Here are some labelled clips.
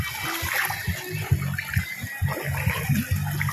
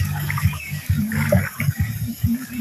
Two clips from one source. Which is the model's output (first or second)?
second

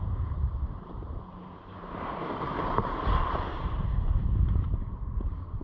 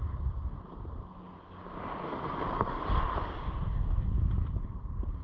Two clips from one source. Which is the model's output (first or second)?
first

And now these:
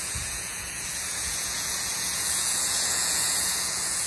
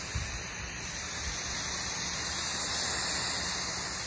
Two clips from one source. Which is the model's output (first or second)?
first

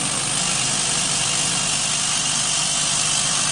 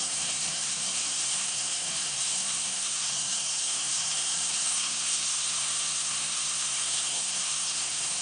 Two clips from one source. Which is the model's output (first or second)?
second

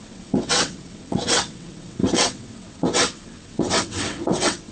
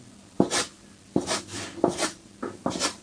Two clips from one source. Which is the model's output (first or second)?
first